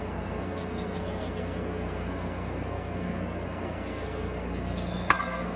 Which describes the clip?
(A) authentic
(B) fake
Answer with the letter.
B